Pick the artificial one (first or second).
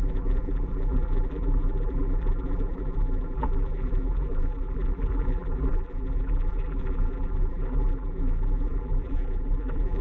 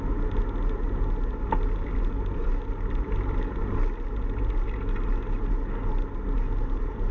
first